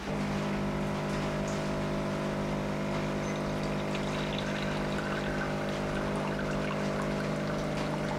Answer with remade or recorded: recorded